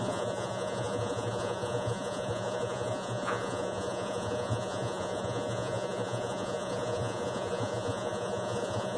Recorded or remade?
remade